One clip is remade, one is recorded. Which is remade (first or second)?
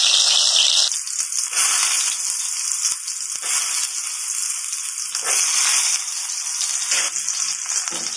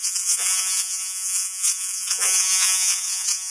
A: second